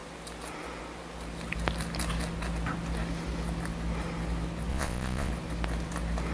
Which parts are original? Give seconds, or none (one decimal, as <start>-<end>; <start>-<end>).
0.0-4.7; 5.3-6.3